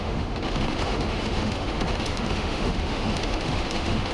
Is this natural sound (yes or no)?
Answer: no